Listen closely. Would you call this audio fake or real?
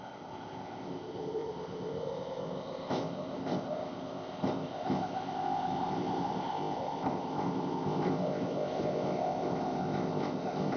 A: fake